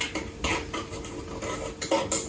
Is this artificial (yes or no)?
no